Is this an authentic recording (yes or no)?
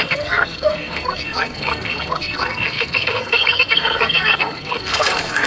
no